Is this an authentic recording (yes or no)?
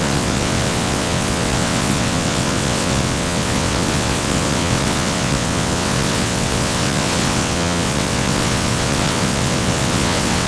no